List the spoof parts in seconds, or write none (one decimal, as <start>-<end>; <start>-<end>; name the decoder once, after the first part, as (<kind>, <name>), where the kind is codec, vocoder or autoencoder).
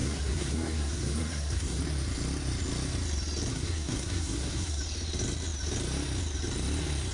0.0-1.8 (codec, SNAC); 3.5-4.8